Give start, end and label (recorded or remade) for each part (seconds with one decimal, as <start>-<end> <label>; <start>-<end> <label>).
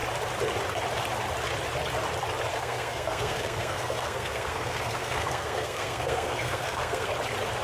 0.0-2.5 recorded; 2.5-7.1 remade; 7.1-7.6 recorded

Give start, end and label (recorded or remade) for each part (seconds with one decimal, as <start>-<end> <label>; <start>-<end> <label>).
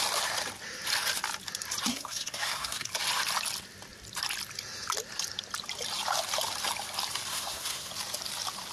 0.0-1.9 recorded; 1.9-2.9 remade; 2.9-7.3 recorded; 7.3-7.9 remade; 7.9-8.7 recorded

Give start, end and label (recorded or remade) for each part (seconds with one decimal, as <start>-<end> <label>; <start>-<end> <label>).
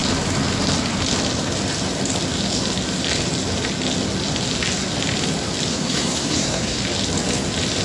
0.0-5.7 recorded; 5.7-6.8 remade; 6.8-7.8 recorded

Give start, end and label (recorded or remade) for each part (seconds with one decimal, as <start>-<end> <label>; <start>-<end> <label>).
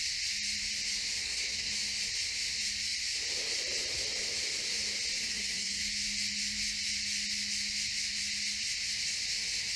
0.0-1.2 recorded; 1.2-1.7 remade; 1.7-5.2 recorded; 5.2-5.8 remade; 5.8-9.8 recorded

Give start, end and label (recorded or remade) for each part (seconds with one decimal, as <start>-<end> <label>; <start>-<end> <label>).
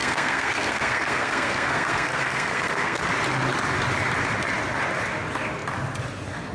0.0-3.0 remade; 3.0-6.5 recorded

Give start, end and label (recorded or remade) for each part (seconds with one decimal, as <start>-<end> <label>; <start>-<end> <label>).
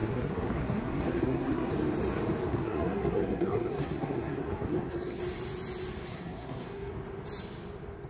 0.0-1.7 remade; 1.7-2.5 recorded; 2.5-5.2 remade; 5.2-6.0 recorded; 6.0-6.9 remade; 6.9-8.1 recorded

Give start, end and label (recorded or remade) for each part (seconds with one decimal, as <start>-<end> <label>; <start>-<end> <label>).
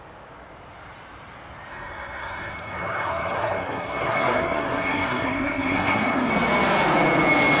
0.0-1.7 recorded; 1.7-6.3 remade; 6.3-7.6 recorded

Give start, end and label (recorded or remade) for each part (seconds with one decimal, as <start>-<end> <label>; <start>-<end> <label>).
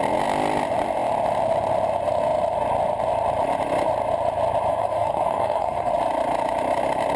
0.0-4.7 recorded; 4.7-5.9 remade; 5.9-7.2 recorded